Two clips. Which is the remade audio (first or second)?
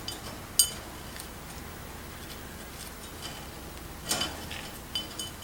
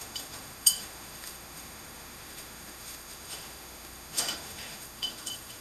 second